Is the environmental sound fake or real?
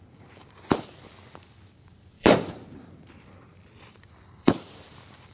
fake